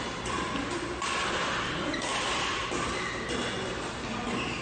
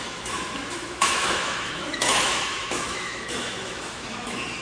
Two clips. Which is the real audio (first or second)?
first